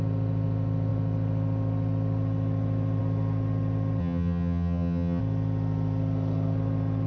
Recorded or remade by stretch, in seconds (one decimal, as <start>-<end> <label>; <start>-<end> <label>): 0.0-4.0 recorded; 4.0-5.2 remade; 5.2-7.1 recorded